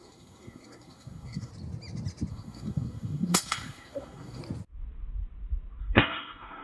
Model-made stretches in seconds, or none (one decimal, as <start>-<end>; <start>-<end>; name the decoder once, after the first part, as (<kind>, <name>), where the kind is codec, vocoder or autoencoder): 0.0-1.5 (codec, SNAC); 2.3-4.4; 5.8-6.6